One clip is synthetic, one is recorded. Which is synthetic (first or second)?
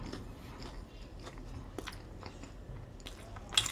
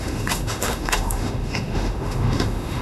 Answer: second